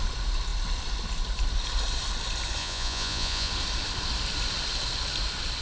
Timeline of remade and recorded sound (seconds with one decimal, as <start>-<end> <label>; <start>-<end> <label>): 0.0-2.6 recorded; 2.6-3.5 remade; 3.5-5.6 recorded